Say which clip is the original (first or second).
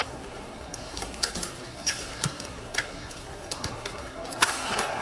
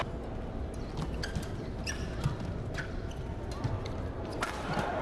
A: second